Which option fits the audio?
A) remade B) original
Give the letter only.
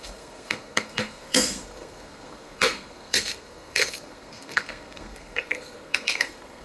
A